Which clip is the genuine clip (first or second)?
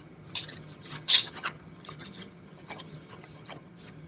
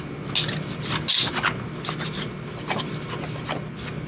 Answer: second